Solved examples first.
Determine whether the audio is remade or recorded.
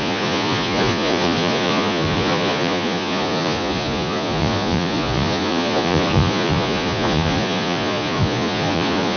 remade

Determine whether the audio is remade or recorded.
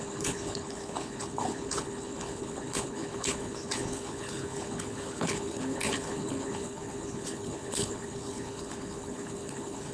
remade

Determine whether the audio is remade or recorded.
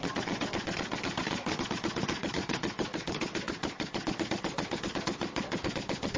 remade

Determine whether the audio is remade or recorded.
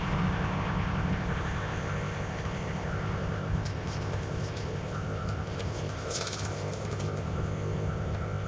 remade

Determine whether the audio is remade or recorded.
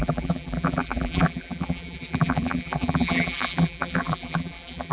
remade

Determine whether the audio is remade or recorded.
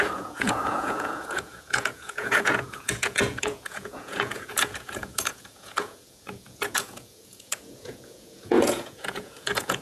remade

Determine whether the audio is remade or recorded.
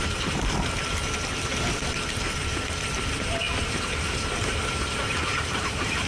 remade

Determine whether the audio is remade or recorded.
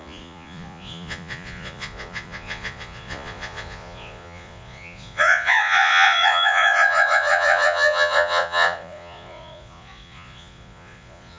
remade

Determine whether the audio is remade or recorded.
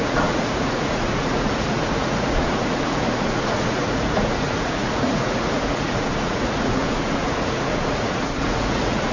remade